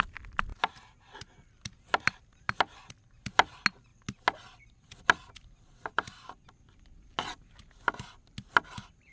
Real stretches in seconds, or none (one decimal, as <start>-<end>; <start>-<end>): 0.0-9.1